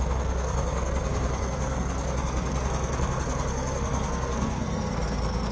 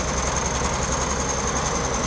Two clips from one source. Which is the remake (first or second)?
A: first